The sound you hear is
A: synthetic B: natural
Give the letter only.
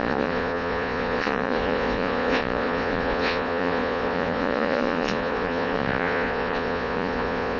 A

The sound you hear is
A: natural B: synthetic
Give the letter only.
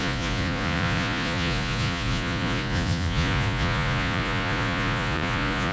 B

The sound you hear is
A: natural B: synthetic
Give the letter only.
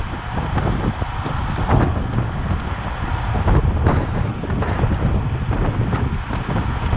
A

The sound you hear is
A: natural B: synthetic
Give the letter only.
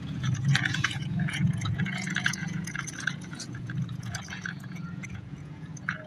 B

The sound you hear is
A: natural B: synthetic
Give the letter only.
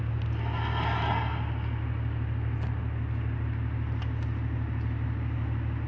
A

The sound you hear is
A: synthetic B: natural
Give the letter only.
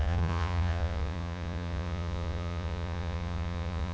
A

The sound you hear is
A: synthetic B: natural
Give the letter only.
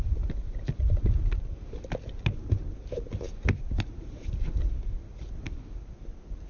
B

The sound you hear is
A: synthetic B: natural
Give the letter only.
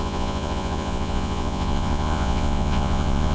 A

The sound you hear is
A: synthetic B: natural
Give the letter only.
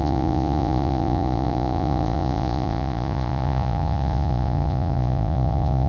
A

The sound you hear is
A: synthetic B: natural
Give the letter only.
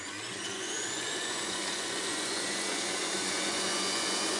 A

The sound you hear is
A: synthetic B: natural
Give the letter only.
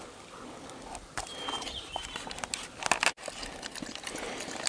B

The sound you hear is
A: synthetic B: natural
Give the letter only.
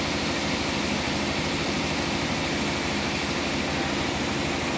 B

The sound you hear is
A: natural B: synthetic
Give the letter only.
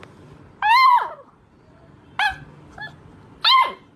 A